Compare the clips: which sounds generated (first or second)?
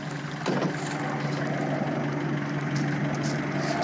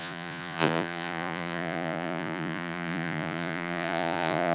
second